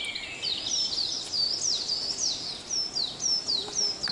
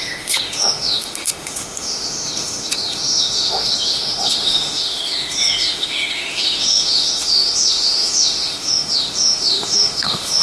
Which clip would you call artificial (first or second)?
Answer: second